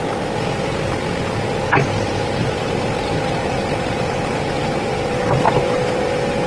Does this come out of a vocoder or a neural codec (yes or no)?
no